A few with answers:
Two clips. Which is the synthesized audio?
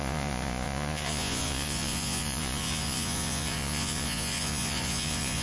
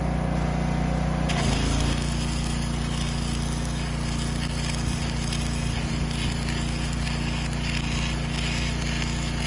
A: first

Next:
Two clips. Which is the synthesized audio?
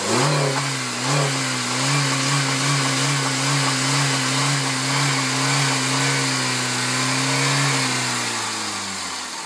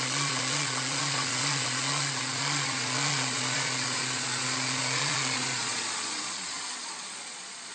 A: second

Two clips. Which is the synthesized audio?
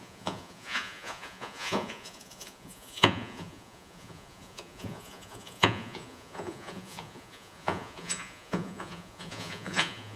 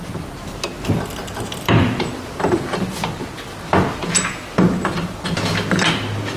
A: first